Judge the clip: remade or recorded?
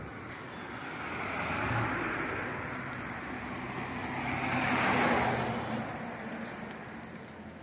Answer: recorded